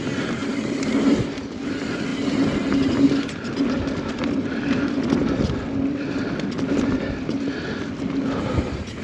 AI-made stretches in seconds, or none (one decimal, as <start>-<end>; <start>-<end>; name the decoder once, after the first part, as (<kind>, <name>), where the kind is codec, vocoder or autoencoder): none